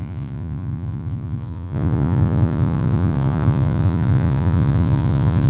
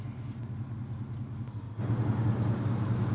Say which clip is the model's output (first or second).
first